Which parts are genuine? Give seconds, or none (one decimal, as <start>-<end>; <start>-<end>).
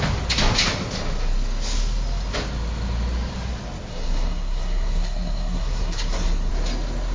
0.0-3.9; 6.5-7.1